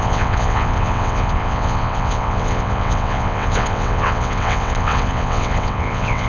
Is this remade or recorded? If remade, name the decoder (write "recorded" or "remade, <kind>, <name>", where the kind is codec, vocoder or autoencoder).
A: remade, vocoder, WaveNeXt